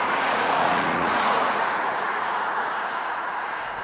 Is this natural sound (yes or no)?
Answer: no